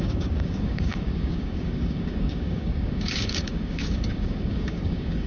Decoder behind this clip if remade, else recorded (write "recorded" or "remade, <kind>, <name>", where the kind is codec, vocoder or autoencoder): remade, codec, DAC